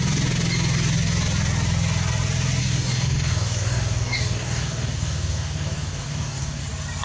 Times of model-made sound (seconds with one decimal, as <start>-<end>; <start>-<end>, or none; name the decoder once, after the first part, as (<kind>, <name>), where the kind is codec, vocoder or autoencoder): 2.6-6.6 (codec, DAC)